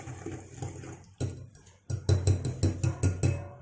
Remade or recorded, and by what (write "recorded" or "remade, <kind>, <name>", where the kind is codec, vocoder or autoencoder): recorded